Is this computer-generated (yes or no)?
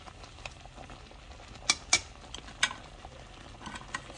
no